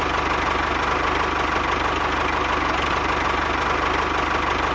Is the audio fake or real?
real